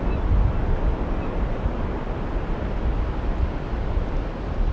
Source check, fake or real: real